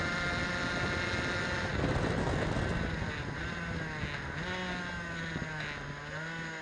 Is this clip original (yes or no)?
yes